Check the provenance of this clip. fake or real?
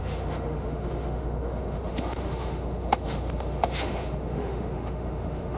fake